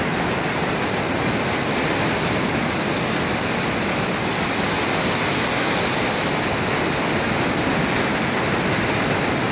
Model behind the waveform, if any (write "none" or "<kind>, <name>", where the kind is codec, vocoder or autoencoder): none